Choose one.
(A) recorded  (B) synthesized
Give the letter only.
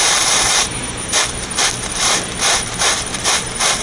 B